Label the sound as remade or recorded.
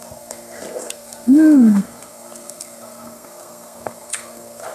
remade